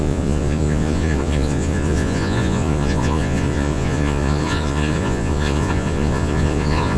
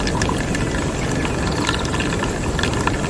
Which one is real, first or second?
second